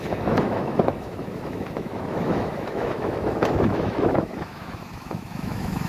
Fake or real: fake